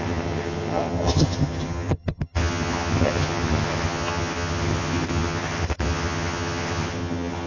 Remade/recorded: remade